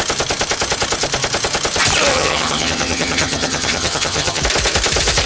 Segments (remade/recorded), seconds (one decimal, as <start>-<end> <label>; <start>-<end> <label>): 0.0-2.1 recorded; 2.1-4.4 remade; 4.4-5.3 recorded